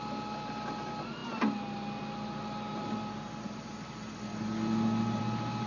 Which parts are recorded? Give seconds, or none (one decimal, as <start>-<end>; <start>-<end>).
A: 0.0-5.7